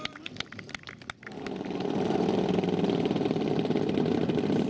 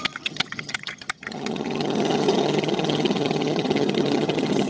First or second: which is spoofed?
second